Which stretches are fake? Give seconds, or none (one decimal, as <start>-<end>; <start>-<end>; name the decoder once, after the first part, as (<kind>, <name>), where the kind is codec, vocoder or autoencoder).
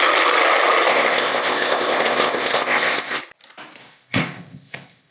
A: 0.9-3.2 (codec, ZipCodec); 3.8-5.1